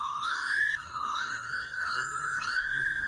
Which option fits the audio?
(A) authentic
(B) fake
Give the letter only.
B